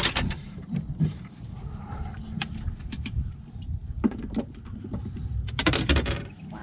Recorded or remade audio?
remade